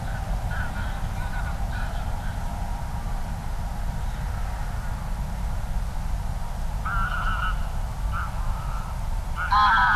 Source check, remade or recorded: recorded